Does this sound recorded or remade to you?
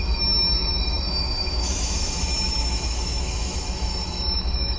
remade